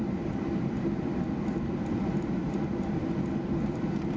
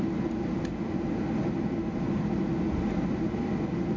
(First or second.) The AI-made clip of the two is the first